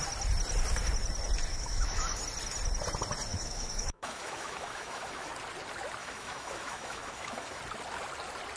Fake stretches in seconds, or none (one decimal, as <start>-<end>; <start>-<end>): 1.5-2.2; 3.3-5.3; 6.0-7.6